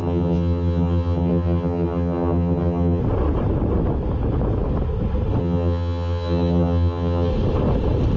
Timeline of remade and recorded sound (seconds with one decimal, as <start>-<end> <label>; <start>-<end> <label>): 0.0-3.0 remade; 3.0-5.4 recorded; 5.4-7.3 remade; 7.3-8.2 recorded